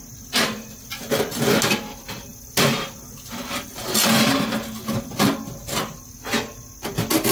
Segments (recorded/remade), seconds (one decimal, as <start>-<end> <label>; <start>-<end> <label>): 0.0-7.3 recorded